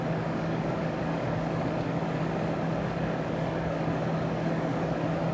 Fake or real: fake